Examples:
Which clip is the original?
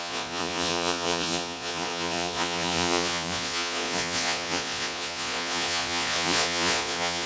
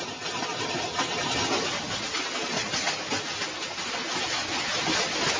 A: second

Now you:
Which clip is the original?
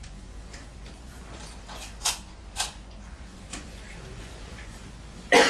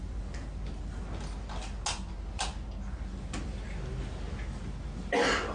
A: second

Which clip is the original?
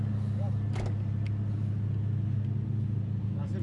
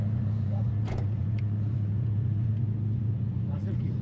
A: first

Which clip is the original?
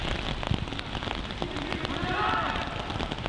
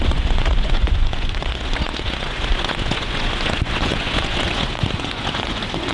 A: first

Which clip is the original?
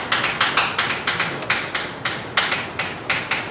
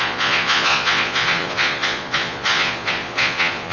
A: first